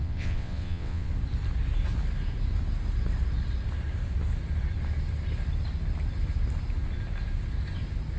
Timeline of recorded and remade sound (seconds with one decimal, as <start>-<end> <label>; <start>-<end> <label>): 0.0-1.1 remade; 1.1-8.2 recorded